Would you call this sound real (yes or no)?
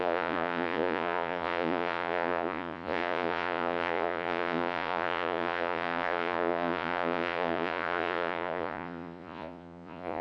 no